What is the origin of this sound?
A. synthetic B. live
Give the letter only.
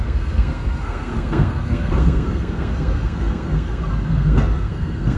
A